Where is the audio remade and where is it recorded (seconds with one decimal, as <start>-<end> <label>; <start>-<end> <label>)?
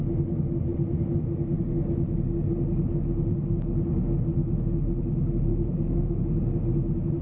0.0-5.5 recorded; 5.5-6.2 remade; 6.2-7.2 recorded